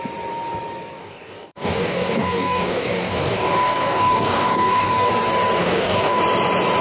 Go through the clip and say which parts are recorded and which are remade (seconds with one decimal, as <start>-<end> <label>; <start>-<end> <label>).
0.0-1.0 recorded; 1.0-5.1 remade; 5.1-5.6 recorded; 5.6-6.2 remade; 6.2-6.8 recorded